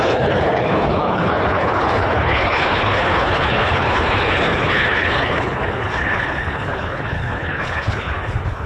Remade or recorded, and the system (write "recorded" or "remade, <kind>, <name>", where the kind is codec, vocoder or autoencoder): remade, codec, HILCodec